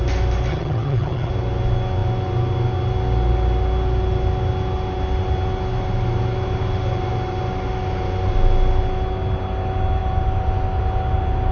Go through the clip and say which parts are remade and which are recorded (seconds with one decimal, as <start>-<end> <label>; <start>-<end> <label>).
0.0-0.5 recorded; 0.5-1.3 remade; 1.3-11.5 recorded